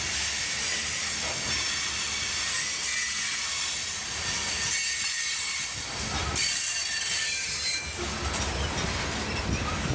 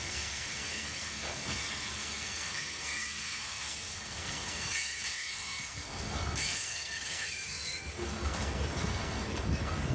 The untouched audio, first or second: first